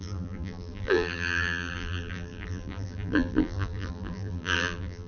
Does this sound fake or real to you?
fake